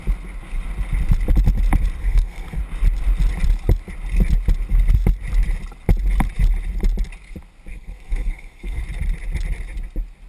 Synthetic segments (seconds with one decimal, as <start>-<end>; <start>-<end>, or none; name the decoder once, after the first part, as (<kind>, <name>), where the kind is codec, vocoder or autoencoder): 2.0-2.6 (codec, SNAC); 7.7-8.8